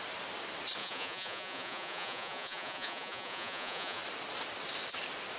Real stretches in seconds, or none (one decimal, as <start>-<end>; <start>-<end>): 0.0-0.8; 4.0-5.4